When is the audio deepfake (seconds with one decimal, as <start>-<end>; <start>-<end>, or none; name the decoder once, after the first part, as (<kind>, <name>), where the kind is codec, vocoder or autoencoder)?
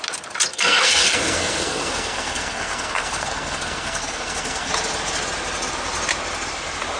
0.5-4.7 (codec, SNAC)